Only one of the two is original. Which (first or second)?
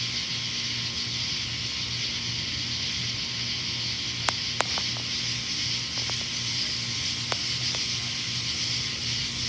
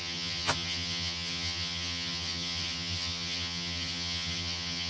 first